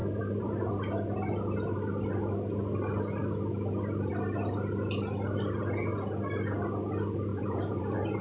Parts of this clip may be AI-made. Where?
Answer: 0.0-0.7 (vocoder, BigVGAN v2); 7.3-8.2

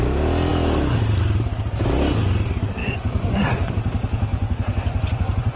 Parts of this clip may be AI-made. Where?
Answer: 2.8-3.7 (vocoder, Vocos); 4.3-5.6

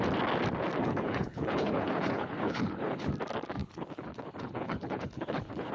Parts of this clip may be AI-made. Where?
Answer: 0.8-3.1 (codec, HILCodec); 3.6-5.7